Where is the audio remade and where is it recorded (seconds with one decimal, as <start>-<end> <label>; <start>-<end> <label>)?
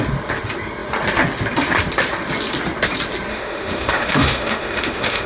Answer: 0.0-3.3 recorded; 3.3-5.3 remade